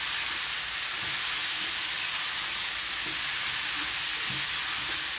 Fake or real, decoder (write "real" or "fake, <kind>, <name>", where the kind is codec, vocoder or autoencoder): real